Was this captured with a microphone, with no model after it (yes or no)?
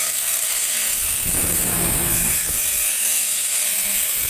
no